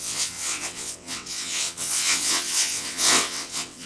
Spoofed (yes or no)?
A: yes